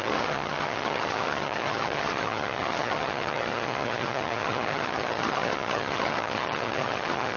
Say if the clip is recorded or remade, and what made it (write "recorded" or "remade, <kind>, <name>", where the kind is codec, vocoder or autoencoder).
remade, vocoder, HiFi-GAN